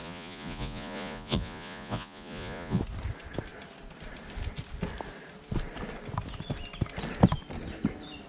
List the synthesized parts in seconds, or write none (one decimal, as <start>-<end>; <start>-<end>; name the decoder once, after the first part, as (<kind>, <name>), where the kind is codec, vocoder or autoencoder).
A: 0.0-2.8 (vocoder, Vocos)